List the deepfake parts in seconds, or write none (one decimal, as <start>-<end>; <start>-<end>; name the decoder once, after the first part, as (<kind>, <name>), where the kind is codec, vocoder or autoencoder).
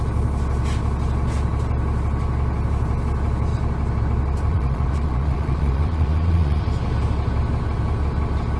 4.5-6.6 (vocoder, Vocos)